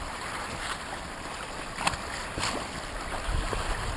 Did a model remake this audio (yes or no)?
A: no